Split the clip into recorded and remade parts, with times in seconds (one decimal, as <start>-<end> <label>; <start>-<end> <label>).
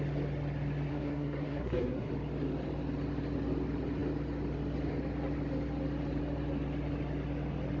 0.0-0.9 recorded; 0.9-2.1 remade; 2.1-7.8 recorded